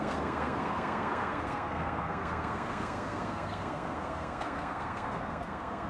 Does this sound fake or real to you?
fake